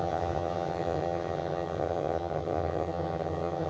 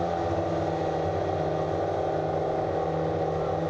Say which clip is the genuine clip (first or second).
second